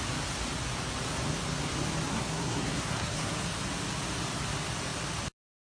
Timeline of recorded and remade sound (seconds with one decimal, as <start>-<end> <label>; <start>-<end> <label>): 0.0-2.1 recorded; 2.1-3.3 remade; 3.3-5.6 recorded